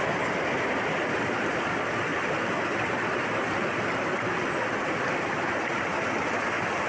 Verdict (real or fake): real